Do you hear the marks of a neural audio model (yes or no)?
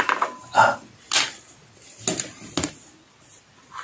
no